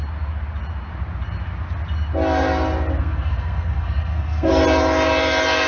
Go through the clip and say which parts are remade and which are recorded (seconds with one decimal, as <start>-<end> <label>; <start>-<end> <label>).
0.0-3.0 recorded; 3.0-4.5 remade; 4.5-5.7 recorded